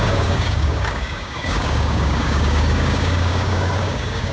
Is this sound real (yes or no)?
no